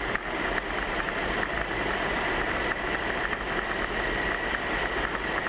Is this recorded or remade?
recorded